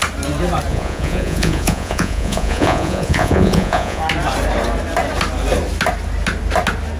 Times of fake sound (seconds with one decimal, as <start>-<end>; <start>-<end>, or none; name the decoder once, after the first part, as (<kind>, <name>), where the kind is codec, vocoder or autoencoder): 0.7-4.0 (vocoder, Vocos)